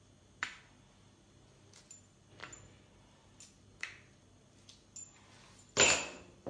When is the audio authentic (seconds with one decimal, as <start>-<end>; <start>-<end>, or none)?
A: 0.0-6.5